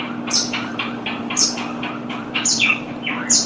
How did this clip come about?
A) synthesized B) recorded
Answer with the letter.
A